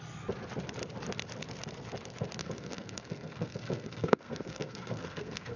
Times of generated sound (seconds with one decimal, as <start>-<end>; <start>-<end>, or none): 2.4-5.6